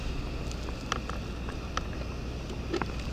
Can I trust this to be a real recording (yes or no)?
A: yes